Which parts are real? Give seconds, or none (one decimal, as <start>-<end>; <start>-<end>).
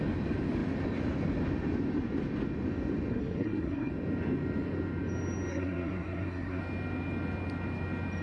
0.0-3.1; 3.9-5.5; 6.6-8.2